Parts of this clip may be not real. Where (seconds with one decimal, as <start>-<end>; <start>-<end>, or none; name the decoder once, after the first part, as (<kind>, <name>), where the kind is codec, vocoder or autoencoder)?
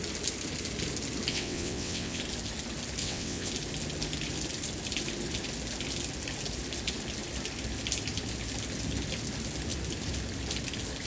1.3-2.2 (vocoder, WaveNeXt); 3.0-3.5